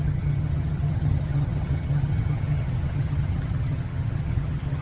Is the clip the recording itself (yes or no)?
no